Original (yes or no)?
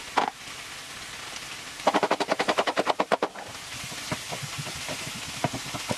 yes